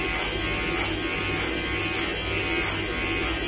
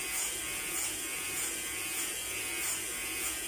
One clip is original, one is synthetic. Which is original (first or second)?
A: first